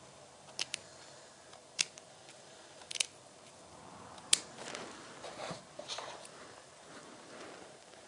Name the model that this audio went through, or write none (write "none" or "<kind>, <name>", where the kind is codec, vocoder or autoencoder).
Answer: vocoder, BigVGAN v2